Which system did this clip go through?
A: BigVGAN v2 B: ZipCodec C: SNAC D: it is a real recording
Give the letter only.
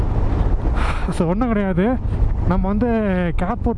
D